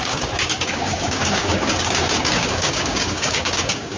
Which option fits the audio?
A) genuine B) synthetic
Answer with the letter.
B